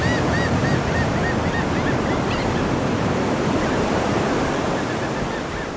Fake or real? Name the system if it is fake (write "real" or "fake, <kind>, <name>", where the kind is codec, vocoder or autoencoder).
real